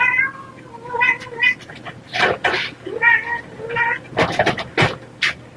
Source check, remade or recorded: recorded